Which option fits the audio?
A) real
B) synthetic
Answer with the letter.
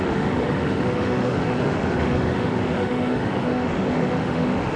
B